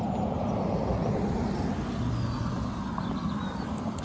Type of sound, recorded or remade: recorded